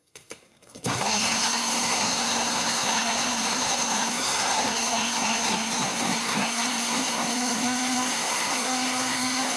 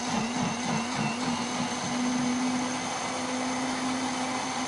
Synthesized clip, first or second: first